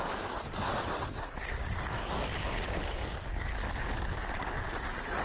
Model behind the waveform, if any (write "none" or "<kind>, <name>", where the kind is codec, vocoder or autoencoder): none